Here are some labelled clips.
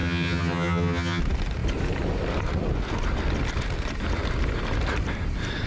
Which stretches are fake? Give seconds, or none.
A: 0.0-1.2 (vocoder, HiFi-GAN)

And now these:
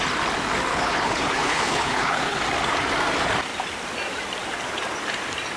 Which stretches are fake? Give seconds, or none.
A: 0.7-2.4 (codec, HILCodec)